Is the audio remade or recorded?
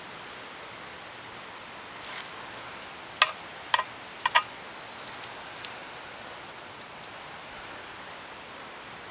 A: recorded